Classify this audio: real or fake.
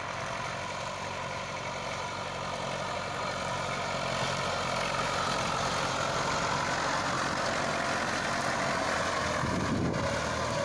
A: real